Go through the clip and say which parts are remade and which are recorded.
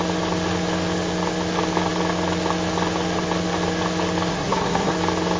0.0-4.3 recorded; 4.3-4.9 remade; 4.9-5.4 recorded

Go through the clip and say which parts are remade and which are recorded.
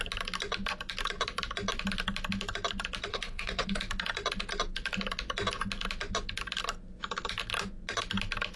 0.0-3.1 recorded; 3.1-3.8 remade; 3.8-8.6 recorded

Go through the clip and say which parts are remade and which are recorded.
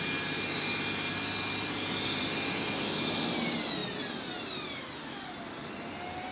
0.0-6.3 recorded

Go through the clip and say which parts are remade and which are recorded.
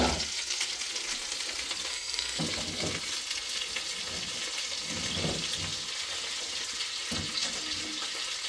0.0-1.9 recorded; 1.9-2.4 remade; 2.4-8.5 recorded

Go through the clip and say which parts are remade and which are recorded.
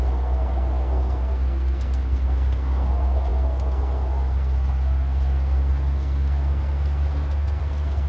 0.0-8.1 remade